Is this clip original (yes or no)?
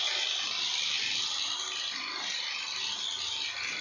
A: yes